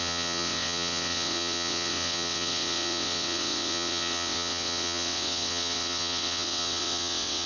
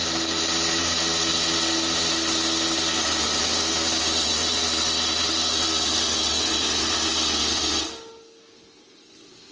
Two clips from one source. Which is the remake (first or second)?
first